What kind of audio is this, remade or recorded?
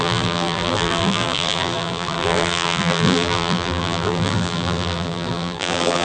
remade